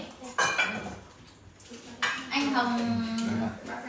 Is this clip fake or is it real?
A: real